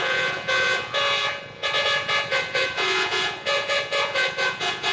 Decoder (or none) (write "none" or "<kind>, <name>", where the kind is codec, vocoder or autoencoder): vocoder, Vocos